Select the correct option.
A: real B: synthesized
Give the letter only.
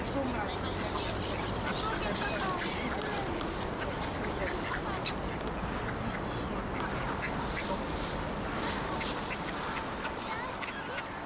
A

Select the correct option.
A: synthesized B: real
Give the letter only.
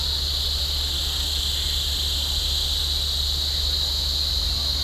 B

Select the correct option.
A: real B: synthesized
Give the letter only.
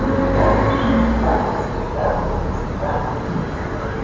A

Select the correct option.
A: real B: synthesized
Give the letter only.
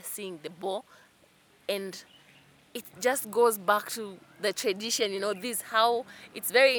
A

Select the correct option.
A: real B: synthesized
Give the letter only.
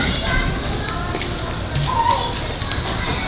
A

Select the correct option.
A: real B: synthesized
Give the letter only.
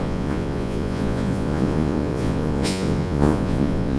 B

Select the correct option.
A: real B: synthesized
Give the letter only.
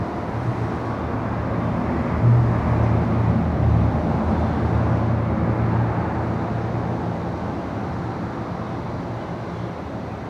A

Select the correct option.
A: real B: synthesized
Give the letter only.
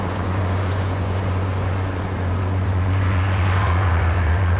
B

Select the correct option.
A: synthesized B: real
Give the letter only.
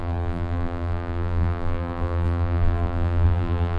A